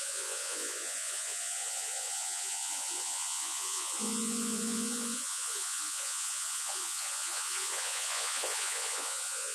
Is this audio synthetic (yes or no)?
yes